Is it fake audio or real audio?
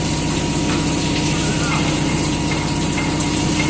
fake